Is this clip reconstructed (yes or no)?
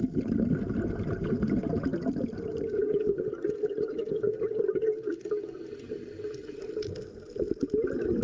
no